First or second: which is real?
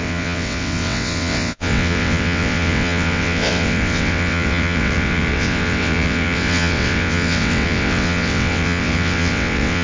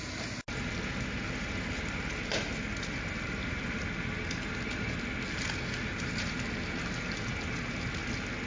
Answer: second